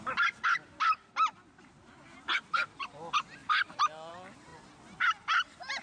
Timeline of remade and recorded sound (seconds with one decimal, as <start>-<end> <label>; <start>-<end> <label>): 0.0-5.8 recorded